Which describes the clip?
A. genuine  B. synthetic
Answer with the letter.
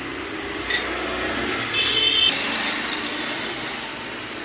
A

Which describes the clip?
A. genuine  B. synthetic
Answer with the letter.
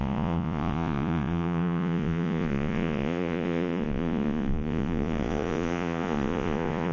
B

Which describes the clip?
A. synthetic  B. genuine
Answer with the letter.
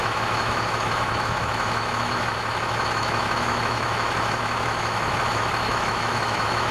A